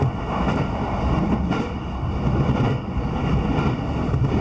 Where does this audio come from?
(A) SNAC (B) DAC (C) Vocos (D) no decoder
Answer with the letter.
D